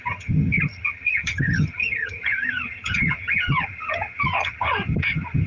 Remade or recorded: remade